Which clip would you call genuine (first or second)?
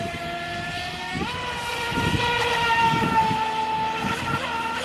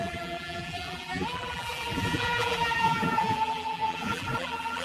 first